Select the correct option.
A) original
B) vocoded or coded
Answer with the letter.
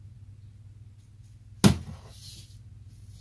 A